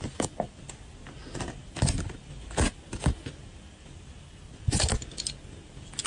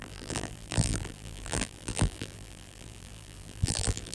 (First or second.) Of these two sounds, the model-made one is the second